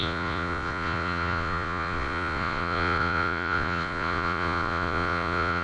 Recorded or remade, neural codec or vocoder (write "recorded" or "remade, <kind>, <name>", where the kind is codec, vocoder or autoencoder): remade, vocoder, Vocos